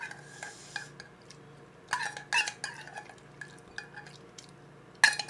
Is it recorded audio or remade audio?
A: recorded